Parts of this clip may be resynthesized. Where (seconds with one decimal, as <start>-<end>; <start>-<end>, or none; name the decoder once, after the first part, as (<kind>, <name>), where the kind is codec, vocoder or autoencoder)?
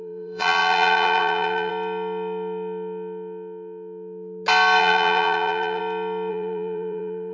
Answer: 0.0-1.7 (vocoder, BigVGAN v2); 4.8-5.8; 6.3-7.3